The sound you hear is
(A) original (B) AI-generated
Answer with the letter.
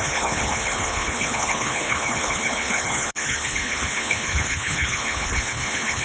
B